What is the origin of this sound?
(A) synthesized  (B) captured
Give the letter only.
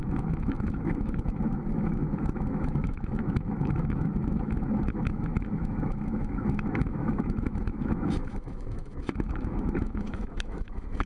A